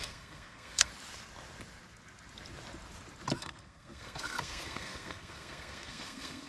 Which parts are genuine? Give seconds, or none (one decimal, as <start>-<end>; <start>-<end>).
0.9-3.4